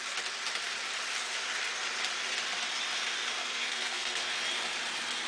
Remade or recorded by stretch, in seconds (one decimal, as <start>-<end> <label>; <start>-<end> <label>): 0.0-3.4 recorded; 3.4-4.3 remade; 4.3-5.3 recorded